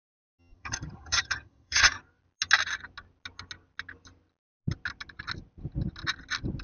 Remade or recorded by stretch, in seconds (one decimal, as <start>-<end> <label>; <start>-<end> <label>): 0.0-0.4 recorded; 0.4-2.0 remade; 2.0-6.6 recorded